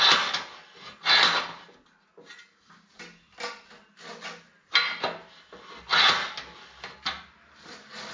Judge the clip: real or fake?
real